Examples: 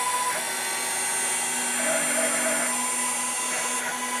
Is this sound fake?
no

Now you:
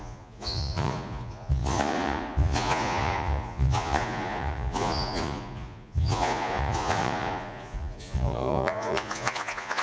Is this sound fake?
yes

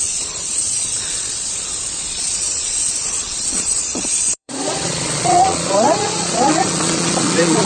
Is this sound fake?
yes